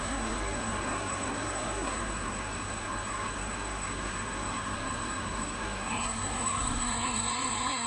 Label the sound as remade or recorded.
remade